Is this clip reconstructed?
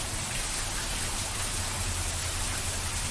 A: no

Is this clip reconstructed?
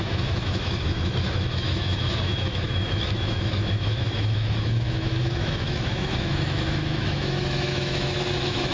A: yes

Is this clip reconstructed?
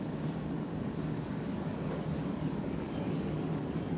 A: yes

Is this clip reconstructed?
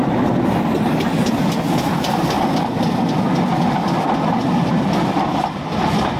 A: no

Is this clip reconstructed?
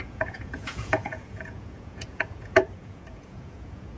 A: yes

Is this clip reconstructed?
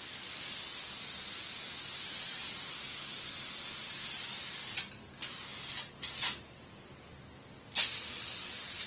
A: no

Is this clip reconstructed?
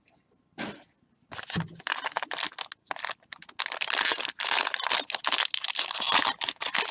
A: no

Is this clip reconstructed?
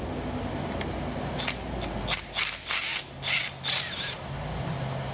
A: no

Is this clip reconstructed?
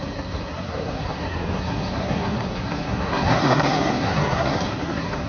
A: yes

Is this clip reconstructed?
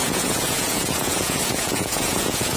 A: yes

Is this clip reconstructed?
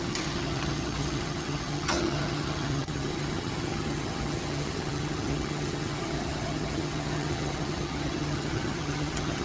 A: yes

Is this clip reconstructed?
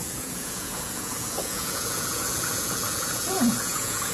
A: yes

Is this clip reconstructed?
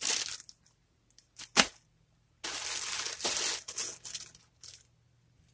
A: no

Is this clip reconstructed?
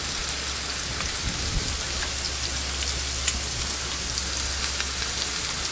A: no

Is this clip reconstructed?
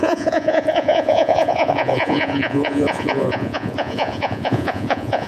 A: yes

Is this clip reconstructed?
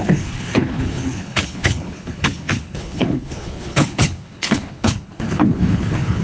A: yes